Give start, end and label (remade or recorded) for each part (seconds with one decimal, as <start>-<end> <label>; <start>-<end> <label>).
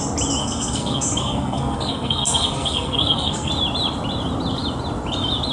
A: 0.0-0.4 recorded; 0.4-3.5 remade; 3.5-5.5 recorded